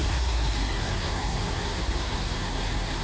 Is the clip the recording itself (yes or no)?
no